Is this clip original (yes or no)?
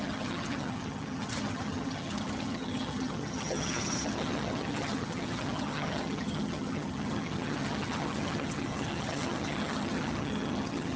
no